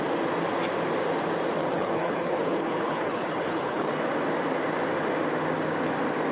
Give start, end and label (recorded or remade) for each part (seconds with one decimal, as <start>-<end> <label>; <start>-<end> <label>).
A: 0.0-1.6 recorded; 1.6-3.9 remade; 3.9-6.3 recorded